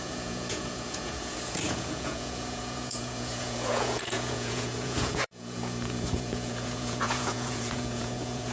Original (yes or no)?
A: no